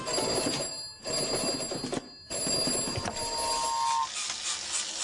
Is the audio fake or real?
real